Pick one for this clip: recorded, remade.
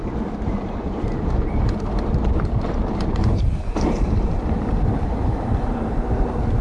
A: remade